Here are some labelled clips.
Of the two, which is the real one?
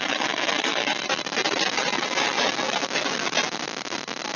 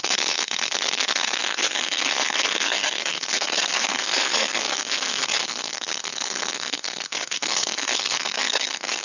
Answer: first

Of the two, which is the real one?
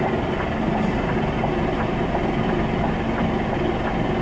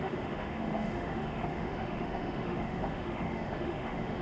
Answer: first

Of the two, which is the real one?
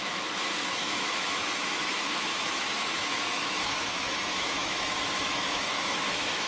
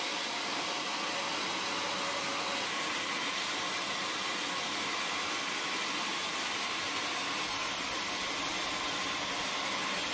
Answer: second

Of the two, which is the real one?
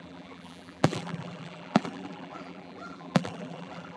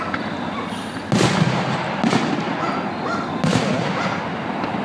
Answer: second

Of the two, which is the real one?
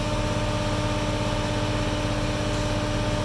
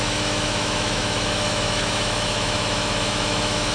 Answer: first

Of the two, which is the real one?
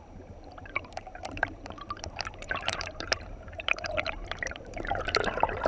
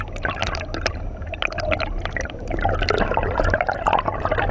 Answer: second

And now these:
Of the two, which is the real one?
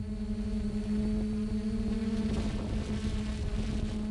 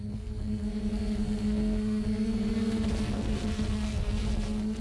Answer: first